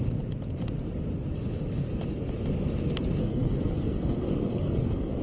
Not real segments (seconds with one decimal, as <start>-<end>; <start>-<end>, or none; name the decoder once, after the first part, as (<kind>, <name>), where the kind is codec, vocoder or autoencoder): 3.2-5.2 (codec, SNAC)